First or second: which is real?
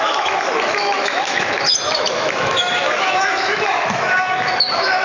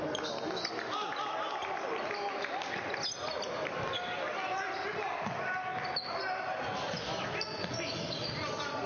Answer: second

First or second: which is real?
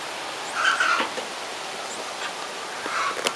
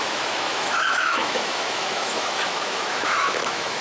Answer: first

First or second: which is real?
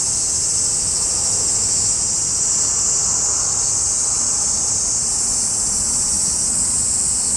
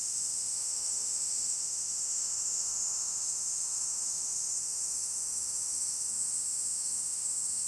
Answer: first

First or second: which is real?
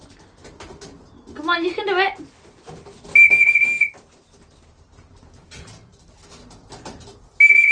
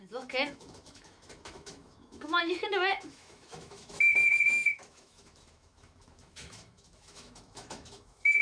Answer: first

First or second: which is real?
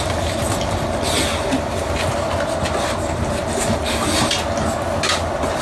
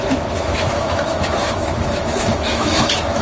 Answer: first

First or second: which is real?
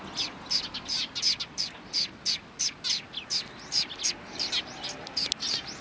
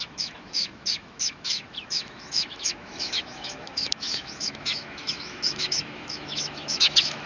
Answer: first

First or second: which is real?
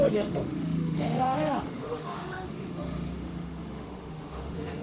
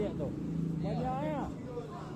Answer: second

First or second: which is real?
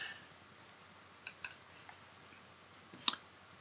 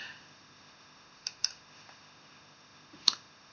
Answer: first